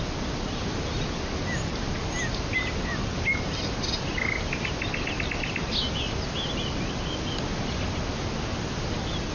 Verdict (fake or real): real